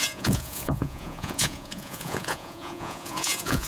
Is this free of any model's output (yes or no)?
no